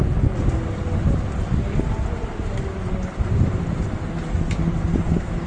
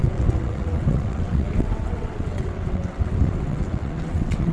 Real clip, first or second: first